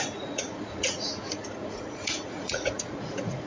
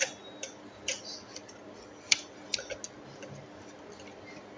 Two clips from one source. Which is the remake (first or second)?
first